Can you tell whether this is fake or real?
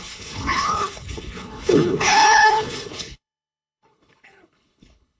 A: fake